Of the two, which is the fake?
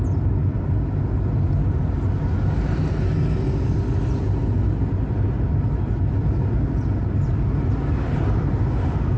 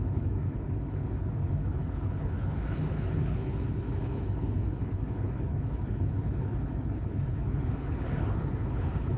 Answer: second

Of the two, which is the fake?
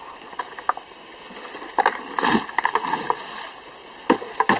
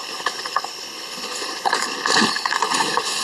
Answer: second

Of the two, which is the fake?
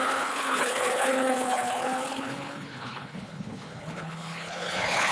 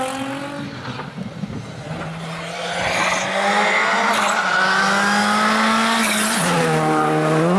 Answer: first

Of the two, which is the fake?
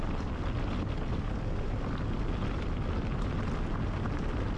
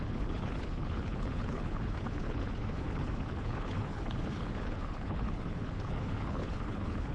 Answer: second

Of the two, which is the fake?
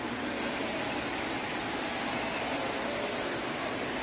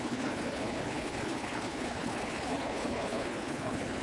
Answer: second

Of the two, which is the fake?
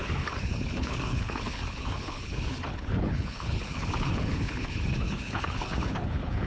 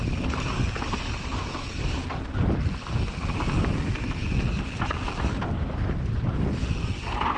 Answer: first